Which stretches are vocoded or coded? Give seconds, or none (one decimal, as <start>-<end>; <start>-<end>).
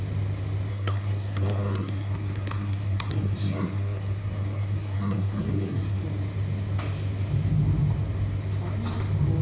0.7-6.0